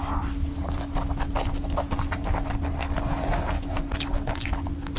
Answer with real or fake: real